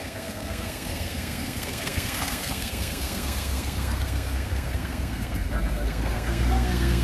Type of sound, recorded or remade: remade